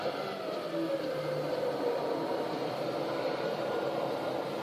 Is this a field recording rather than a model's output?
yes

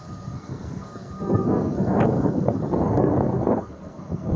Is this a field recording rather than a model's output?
no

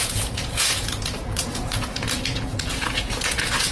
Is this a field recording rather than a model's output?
no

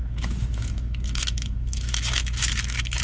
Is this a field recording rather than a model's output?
no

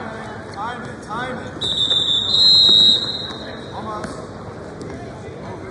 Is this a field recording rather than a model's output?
yes